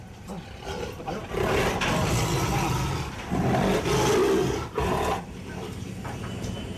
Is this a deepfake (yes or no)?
no